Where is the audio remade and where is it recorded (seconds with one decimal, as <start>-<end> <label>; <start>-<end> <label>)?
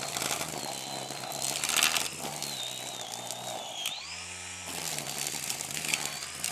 0.0-6.5 recorded